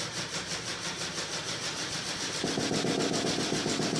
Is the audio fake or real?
real